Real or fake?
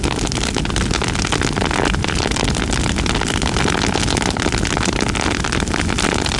real